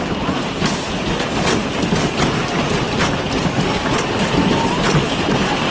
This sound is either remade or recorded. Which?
recorded